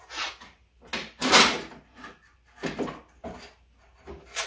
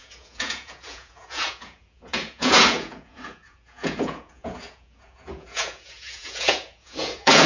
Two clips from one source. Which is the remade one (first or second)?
second